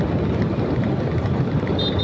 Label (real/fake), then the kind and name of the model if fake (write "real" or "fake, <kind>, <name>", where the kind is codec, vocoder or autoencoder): real